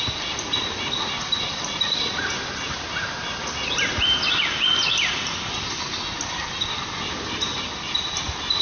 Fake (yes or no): no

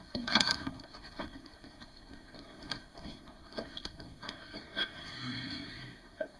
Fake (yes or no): yes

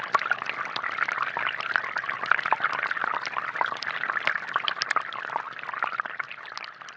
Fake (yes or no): no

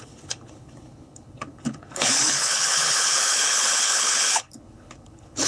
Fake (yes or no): yes